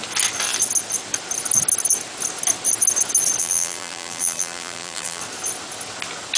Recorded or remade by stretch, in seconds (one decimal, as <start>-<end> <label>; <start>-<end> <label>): 0.0-3.4 recorded; 3.4-5.2 remade; 5.2-6.4 recorded